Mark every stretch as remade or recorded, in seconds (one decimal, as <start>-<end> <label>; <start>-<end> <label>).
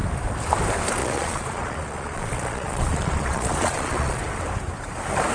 0.0-1.0 recorded; 1.0-4.2 remade; 4.2-5.3 recorded